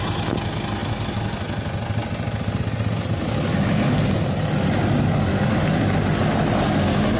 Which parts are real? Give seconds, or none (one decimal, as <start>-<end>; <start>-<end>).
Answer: 0.0-7.2